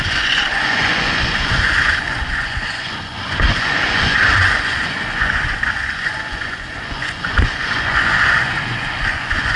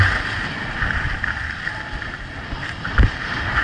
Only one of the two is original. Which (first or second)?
second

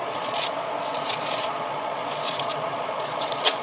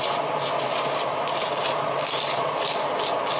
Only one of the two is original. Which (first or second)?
second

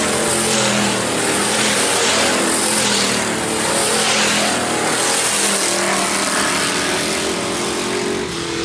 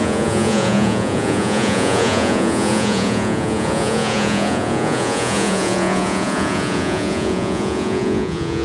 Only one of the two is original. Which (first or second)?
first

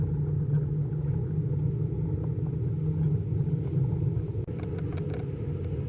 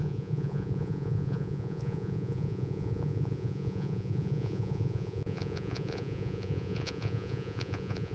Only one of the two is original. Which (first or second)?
first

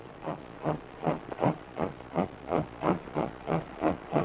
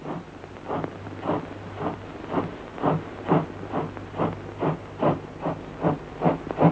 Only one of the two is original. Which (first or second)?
second